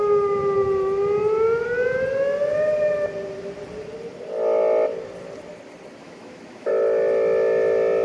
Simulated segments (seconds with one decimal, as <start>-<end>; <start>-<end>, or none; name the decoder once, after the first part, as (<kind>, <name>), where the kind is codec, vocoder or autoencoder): 6.0-6.7 (autoencoder, DAC-VAE)